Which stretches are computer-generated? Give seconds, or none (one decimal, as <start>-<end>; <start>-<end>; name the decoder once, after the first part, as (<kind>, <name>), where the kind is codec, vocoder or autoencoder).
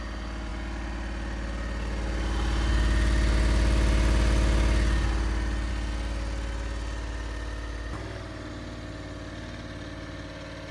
none